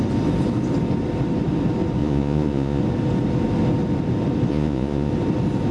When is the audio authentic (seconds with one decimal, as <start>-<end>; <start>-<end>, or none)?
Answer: 0.0-2.0; 2.8-4.5; 5.1-5.7